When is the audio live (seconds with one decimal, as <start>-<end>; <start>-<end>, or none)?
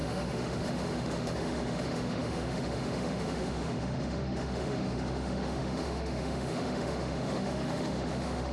none